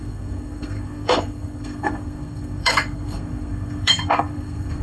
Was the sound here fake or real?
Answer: fake